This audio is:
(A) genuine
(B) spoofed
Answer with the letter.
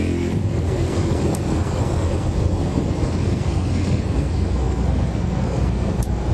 B